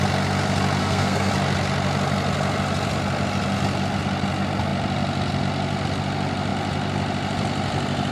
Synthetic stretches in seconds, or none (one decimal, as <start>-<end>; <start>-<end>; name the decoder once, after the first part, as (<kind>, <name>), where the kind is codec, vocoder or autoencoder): 0.8-1.3 (codec, SNAC)

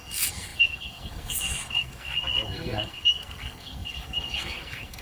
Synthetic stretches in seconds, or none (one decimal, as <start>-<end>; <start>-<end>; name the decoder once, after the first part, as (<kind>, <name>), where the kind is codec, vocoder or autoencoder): 0.0-5.0 (codec, SNAC)

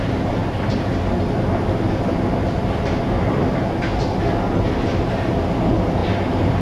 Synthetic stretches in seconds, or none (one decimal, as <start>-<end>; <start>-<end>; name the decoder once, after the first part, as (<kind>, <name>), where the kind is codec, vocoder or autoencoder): none

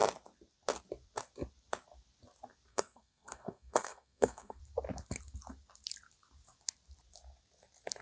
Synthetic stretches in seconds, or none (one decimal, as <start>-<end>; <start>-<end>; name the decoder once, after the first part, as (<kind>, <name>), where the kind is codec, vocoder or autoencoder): 2.7-4.6 (codec, SNAC)

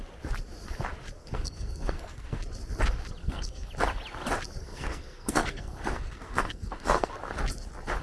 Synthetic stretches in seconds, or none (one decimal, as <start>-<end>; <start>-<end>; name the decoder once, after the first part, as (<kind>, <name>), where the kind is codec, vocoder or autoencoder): 1.2-2.4 (codec, SNAC); 3.2-3.7; 4.6-7.1

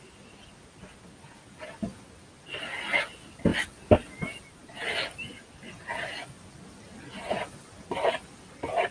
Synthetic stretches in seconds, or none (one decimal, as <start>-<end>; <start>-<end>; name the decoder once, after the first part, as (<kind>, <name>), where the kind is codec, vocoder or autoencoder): none